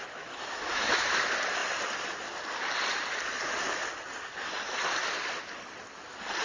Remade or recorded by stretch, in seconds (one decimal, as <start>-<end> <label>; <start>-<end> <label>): 0.0-1.1 remade; 1.1-6.4 recorded